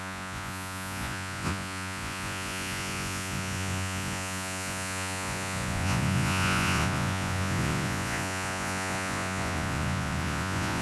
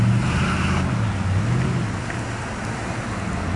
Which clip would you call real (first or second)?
second